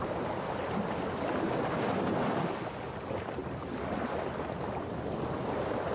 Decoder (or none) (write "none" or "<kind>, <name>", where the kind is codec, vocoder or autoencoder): none